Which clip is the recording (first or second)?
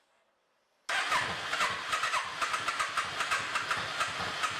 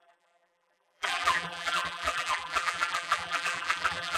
first